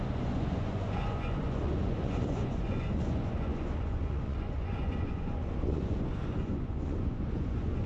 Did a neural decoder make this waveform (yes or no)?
yes